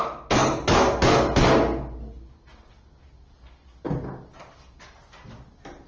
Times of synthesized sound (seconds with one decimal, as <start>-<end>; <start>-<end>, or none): none